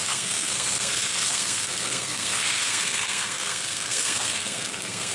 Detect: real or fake fake